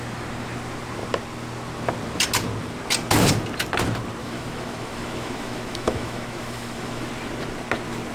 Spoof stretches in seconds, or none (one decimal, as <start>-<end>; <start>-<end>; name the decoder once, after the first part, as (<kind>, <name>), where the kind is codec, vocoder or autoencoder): 4.2-7.1 (autoencoder, DAC-VAE)